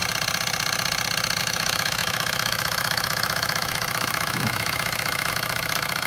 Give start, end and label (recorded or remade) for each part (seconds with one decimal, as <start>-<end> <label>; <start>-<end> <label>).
0.0-1.4 recorded; 1.4-6.1 remade